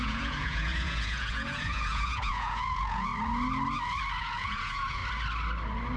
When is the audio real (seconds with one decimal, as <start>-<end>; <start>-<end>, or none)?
3.1-4.2; 5.0-6.0